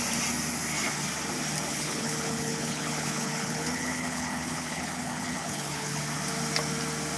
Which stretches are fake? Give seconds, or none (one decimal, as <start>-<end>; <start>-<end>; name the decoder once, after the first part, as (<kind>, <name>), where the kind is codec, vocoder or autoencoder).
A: 1.7-6.0 (codec, HILCodec)